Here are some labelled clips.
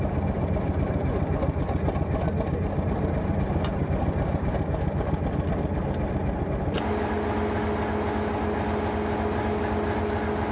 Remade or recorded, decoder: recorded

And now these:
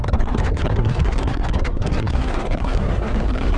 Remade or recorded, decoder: remade, codec, SNAC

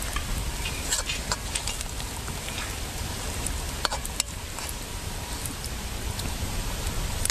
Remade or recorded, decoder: recorded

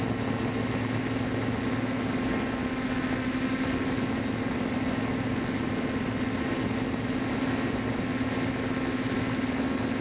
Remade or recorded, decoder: recorded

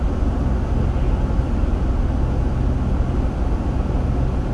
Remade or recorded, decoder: recorded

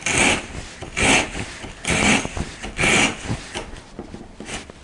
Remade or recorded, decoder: recorded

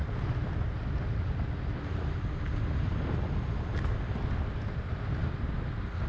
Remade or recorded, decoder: recorded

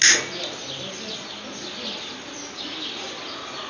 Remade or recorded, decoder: recorded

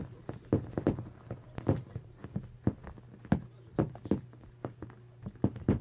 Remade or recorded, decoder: recorded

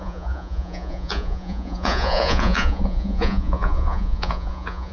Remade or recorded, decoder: remade, vocoder, Vocos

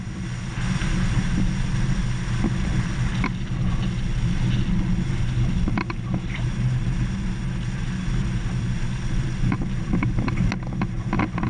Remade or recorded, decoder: recorded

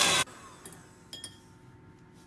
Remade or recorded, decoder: recorded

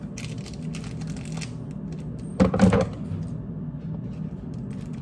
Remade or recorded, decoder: recorded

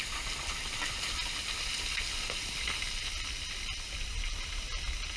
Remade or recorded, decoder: recorded